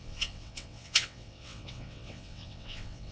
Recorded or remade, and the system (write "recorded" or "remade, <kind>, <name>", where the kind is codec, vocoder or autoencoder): remade, vocoder, WaveNeXt